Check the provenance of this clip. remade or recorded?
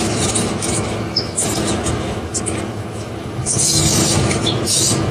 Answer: remade